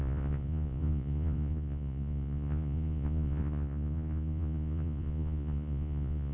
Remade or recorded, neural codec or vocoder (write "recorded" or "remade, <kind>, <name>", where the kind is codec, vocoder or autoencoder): remade, vocoder, Vocos